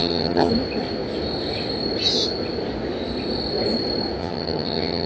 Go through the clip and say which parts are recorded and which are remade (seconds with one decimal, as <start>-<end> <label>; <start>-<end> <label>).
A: 0.0-0.5 remade; 0.5-4.2 recorded; 4.2-5.1 remade